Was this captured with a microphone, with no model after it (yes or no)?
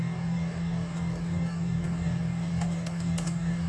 no